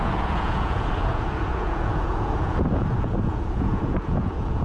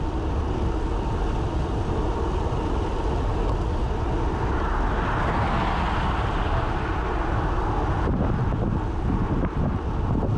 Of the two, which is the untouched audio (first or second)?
second